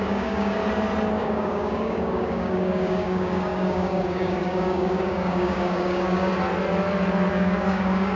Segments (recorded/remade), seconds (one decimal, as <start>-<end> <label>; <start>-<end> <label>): 0.0-0.6 remade; 0.6-1.2 recorded; 1.2-6.3 remade; 6.3-7.3 recorded; 7.3-8.2 remade